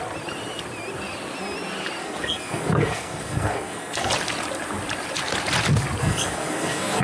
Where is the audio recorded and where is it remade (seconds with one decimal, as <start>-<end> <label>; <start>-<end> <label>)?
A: 0.0-2.0 recorded; 2.0-4.1 remade; 4.1-6.0 recorded; 6.0-7.0 remade